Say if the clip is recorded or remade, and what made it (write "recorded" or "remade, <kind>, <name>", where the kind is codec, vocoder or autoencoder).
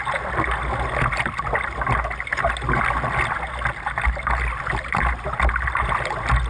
recorded